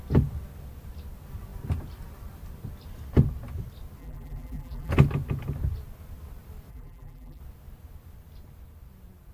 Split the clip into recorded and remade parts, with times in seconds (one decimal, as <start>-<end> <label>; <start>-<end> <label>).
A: 0.0-4.0 recorded; 4.0-4.9 remade; 4.9-6.7 recorded; 6.7-7.4 remade; 7.4-9.3 recorded